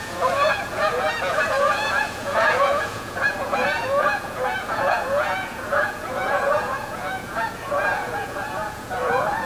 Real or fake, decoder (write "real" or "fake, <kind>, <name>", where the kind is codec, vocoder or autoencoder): fake, vocoder, Vocos